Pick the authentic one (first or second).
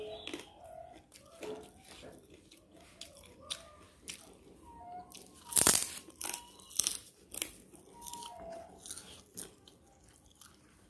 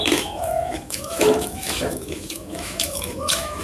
first